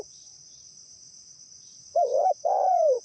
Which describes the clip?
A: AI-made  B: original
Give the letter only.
A